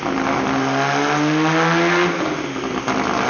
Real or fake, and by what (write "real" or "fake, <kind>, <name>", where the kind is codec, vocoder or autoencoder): real